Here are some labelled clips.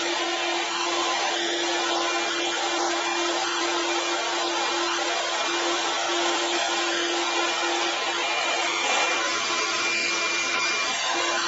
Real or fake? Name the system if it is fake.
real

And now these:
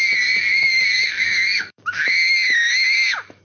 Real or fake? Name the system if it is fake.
fake, autoencoder, DAC-VAE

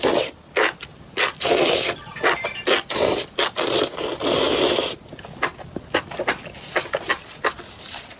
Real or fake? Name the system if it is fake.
real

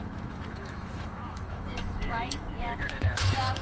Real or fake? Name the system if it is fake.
fake, autoencoder, DAC-VAE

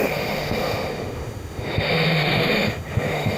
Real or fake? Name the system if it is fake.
fake, autoencoder, DAC-VAE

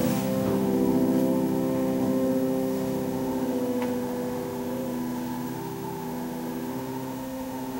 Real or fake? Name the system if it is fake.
fake, autoencoder, DAC-VAE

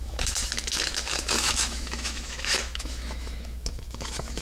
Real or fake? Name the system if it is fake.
fake, autoencoder, DAC-VAE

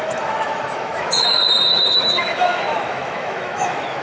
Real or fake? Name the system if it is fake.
fake, autoencoder, DAC-VAE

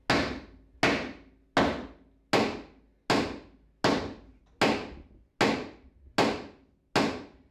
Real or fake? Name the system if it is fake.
real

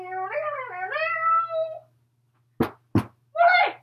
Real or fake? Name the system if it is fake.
real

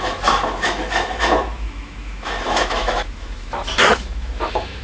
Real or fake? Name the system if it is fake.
fake, autoencoder, DAC-VAE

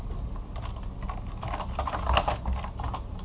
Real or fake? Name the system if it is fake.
real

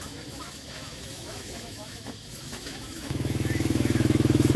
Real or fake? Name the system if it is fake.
fake, autoencoder, DAC-VAE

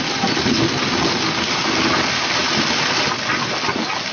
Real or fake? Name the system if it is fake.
real